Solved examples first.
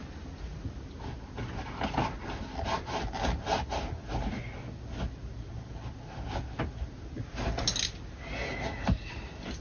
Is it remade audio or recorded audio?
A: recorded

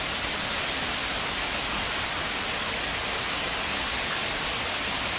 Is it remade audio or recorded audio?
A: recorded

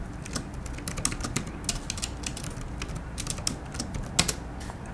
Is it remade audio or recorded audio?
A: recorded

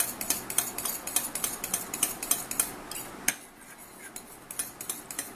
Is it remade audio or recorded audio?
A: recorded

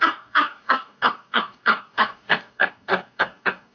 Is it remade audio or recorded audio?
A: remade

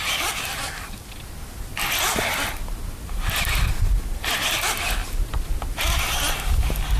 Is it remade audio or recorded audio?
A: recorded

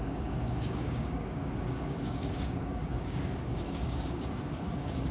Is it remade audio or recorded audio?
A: remade